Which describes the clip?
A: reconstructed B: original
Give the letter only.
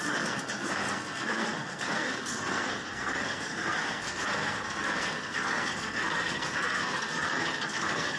A